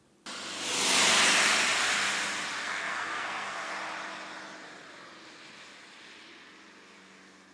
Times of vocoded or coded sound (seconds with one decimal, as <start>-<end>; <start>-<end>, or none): 2.6-3.7